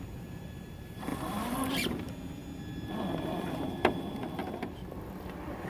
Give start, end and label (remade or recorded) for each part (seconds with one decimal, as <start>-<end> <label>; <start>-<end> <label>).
0.0-5.7 recorded